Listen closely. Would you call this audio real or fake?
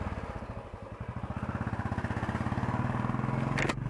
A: real